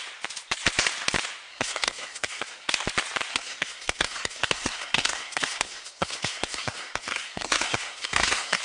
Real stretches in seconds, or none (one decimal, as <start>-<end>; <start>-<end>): 0.0-1.5; 2.7-3.3

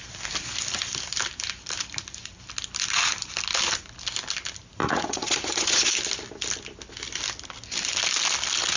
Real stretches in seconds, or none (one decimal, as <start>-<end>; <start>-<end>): 0.0-4.8; 5.9-8.8

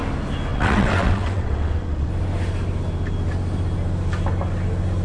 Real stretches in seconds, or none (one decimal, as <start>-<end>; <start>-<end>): 0.0-0.5; 2.1-5.0

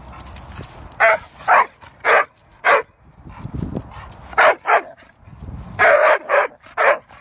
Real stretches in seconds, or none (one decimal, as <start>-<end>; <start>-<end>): 0.0-7.2

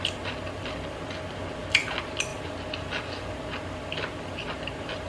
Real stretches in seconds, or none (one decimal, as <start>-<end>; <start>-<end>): 0.0-5.1